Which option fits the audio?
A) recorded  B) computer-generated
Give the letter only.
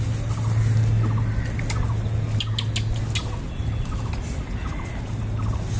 A